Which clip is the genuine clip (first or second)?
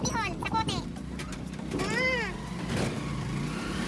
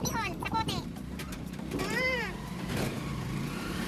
first